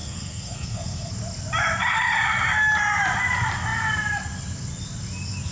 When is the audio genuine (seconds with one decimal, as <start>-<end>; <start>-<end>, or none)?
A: 1.1-5.5